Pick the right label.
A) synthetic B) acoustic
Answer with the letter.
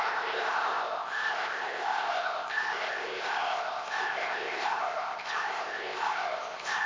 A